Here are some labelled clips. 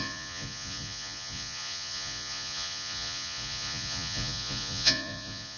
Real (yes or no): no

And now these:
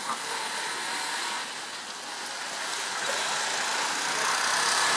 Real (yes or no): yes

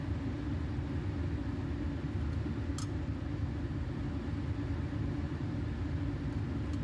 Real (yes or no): yes